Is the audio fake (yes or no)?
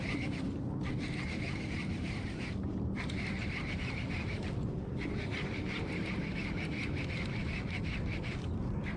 yes